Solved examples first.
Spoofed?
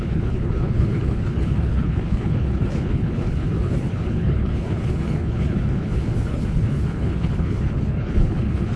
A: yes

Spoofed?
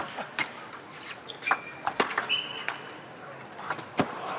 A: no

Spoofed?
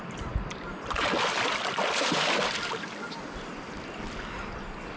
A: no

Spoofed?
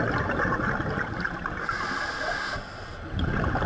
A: no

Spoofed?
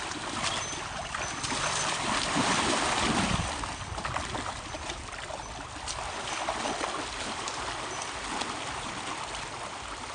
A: no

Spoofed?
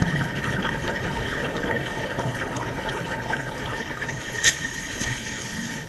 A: yes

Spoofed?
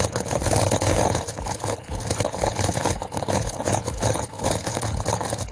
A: yes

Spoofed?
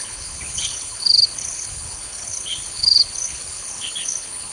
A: yes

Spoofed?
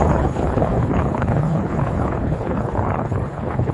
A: yes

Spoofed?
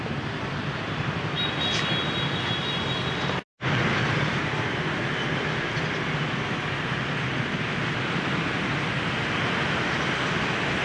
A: no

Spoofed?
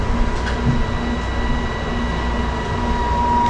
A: no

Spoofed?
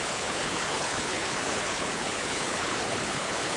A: yes